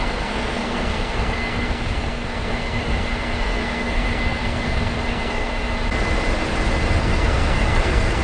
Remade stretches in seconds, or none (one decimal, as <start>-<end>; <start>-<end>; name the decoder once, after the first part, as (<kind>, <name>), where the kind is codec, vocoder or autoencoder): 0.0-5.5 (codec, SNAC); 7.0-8.2